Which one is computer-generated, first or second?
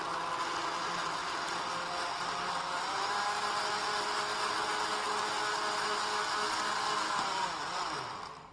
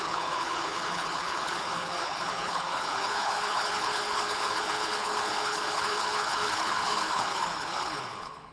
second